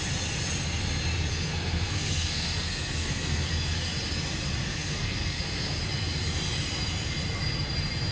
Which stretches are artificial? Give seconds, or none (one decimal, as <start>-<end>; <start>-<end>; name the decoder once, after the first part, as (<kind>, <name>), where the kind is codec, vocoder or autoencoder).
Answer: 1.3-3.5 (codec, SNAC); 4.7-5.8